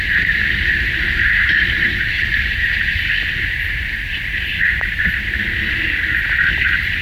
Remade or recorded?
recorded